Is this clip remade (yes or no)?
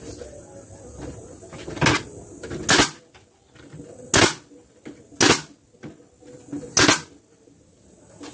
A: no